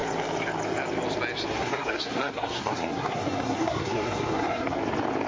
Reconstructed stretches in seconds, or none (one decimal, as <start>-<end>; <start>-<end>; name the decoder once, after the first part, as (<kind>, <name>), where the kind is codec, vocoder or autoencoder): 1.6-4.8 (codec, SNAC)